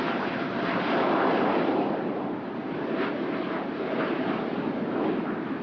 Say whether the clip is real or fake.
real